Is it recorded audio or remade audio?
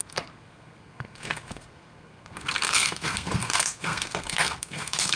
remade